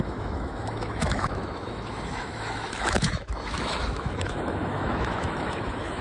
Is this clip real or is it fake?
fake